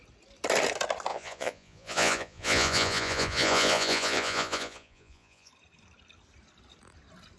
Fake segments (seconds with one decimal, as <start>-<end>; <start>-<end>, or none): 1.1-5.5